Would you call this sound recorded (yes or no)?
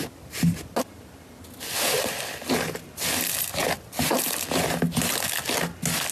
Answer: yes